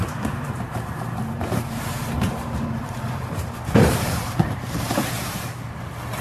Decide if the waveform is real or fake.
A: fake